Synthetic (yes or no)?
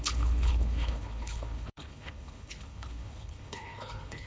yes